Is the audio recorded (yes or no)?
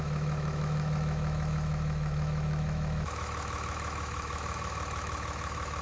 no